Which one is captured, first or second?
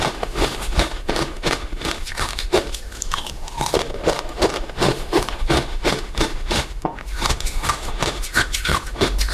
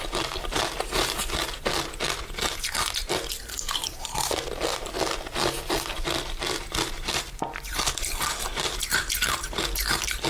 second